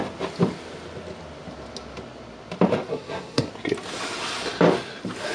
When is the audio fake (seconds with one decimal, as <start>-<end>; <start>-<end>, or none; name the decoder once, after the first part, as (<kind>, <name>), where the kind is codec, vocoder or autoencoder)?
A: 2.9-3.5 (codec, SNAC)